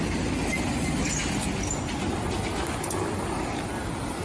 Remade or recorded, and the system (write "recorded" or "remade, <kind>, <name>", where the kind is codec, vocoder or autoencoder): recorded